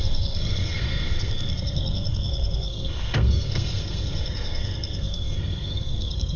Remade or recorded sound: remade